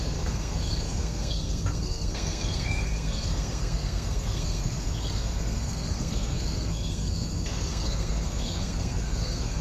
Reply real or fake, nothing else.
fake